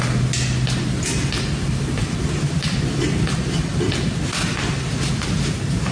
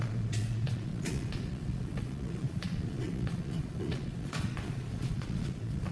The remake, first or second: second